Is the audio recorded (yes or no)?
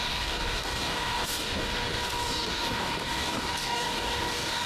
no